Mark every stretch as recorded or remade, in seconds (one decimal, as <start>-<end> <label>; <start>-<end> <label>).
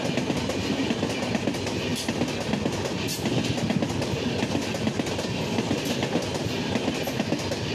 0.0-7.7 recorded